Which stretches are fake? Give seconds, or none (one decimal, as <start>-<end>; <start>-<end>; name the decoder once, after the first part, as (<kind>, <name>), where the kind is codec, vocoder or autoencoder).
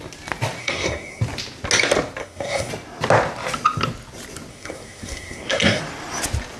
0.6-1.2 (codec, SNAC); 2.2-2.7; 4.5-5.8